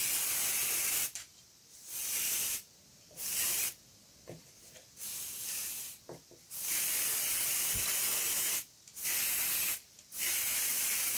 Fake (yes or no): yes